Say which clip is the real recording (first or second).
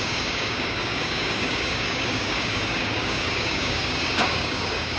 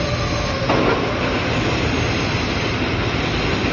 second